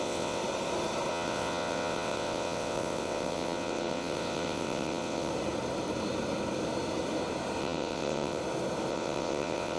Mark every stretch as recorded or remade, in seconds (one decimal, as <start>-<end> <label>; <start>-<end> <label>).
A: 0.0-0.4 remade; 0.4-1.1 recorded; 1.1-5.3 remade; 5.3-7.6 recorded; 7.6-8.4 remade; 8.4-8.9 recorded; 8.9-9.8 remade